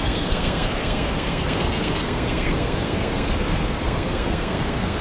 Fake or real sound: fake